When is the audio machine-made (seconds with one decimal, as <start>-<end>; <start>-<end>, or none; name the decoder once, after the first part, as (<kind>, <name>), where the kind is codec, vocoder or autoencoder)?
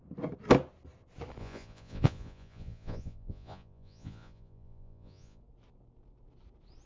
1.4-5.4 (vocoder, Vocos)